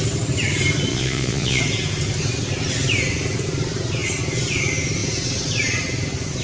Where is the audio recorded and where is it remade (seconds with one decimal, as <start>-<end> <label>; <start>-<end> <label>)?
0.0-0.9 recorded; 0.9-1.6 remade; 1.6-6.4 recorded